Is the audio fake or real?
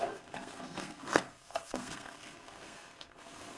fake